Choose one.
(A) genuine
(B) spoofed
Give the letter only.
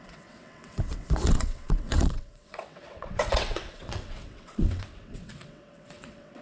B